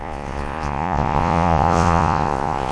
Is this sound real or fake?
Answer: fake